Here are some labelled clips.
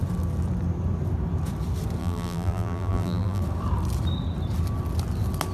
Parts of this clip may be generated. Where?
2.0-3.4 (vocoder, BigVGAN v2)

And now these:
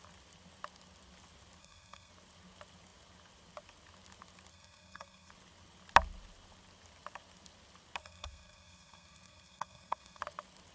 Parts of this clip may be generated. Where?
1.6-2.1 (codec, SNAC); 4.5-5.3; 8.0-10.2

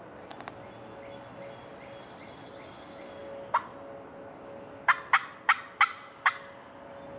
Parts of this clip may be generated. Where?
none